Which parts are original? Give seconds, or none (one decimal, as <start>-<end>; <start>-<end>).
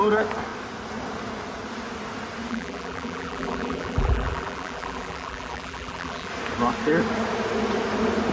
0.0-2.5; 6.3-8.3